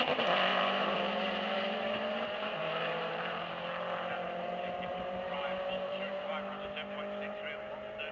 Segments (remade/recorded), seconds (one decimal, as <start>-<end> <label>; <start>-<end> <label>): 0.0-0.5 recorded; 0.5-3.5 remade; 3.5-4.9 recorded; 4.9-6.3 remade; 6.3-8.1 recorded